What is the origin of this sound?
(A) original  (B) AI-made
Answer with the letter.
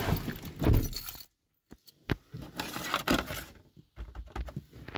A